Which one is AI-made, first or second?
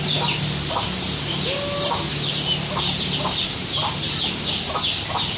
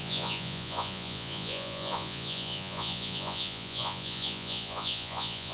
second